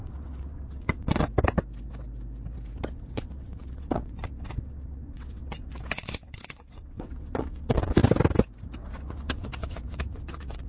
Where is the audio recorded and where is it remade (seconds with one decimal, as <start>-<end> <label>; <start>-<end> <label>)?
0.0-1.3 remade; 1.3-2.9 recorded; 2.9-8.0 remade; 8.0-8.8 recorded; 8.8-10.7 remade